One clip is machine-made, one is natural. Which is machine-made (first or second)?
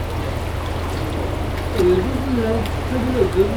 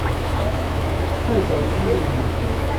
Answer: second